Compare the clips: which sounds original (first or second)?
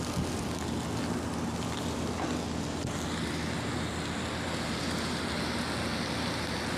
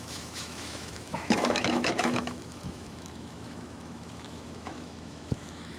first